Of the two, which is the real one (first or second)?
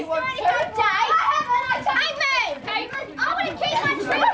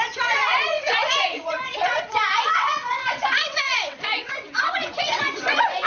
first